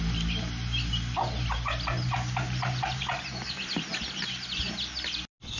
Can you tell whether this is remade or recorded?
recorded